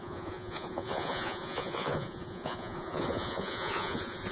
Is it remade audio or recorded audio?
remade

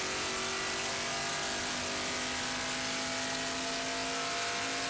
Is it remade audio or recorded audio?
recorded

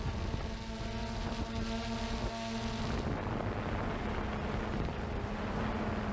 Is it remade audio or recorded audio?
recorded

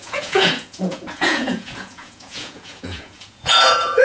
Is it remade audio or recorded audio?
remade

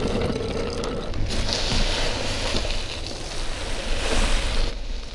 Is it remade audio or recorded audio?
recorded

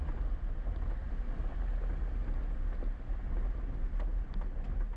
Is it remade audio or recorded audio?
recorded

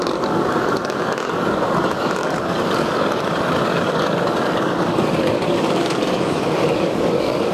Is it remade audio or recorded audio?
remade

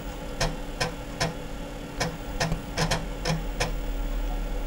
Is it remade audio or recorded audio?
recorded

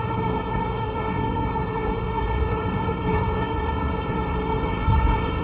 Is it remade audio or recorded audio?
remade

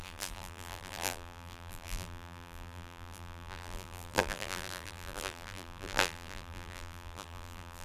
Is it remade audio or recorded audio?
remade